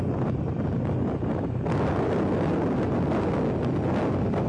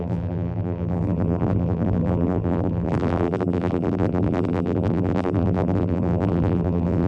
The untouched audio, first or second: first